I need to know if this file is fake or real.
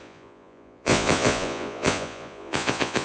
fake